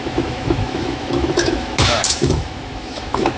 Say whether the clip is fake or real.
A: fake